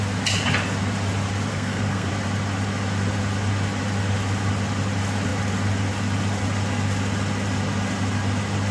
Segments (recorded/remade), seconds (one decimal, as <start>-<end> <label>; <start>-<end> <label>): 0.0-1.5 recorded; 1.5-2.1 remade; 2.1-8.7 recorded